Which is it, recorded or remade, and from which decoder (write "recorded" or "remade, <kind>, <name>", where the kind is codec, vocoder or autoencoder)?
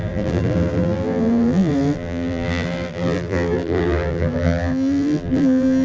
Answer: remade, vocoder, BigVGAN v2